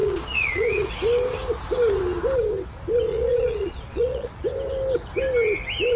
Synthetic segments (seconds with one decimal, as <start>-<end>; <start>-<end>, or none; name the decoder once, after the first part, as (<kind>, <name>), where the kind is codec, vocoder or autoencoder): 0.0-0.9 (vocoder, Vocos); 3.1-4.3

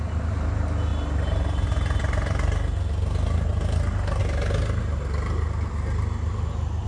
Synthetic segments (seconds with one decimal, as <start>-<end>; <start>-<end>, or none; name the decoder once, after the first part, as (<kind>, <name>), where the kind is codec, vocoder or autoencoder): none

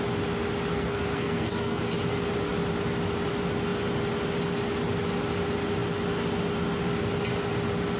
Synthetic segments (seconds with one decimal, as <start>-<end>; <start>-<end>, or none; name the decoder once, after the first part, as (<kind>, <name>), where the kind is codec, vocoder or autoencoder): 0.7-1.8 (codec, SNAC)

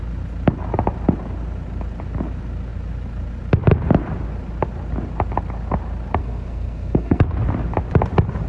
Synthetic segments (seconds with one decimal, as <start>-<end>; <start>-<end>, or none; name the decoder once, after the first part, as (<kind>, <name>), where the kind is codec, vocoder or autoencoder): 6.2-7.2 (codec, SNAC)

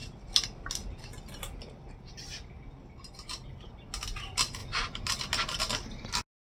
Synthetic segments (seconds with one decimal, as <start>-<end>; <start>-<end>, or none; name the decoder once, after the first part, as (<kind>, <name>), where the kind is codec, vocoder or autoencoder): none

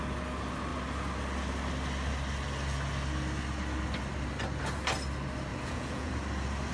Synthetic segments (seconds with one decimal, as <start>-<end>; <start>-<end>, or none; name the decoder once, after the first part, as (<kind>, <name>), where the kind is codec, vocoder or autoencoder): 5.5-6.1 (vocoder, Vocos)

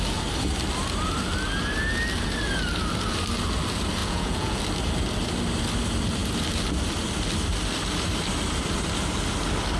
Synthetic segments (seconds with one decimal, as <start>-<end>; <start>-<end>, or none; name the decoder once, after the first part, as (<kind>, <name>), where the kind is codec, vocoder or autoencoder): 4.0-4.6 (vocoder, Vocos)